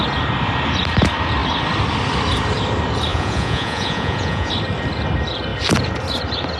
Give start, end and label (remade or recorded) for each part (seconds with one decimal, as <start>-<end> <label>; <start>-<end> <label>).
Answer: 0.0-3.1 recorded; 3.1-4.5 remade; 4.5-6.6 recorded